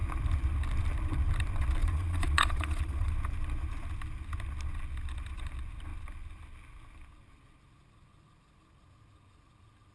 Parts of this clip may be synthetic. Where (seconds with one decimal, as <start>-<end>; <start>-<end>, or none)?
1.8-3.1